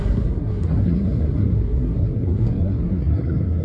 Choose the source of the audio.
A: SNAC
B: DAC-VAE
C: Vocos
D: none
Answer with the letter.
A